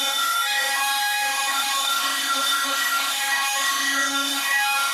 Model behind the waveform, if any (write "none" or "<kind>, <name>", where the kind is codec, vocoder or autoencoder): autoencoder, DAC-VAE